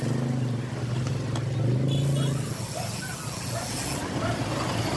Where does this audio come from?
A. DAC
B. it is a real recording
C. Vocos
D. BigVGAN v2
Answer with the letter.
B